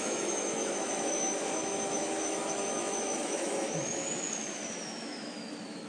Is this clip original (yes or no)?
no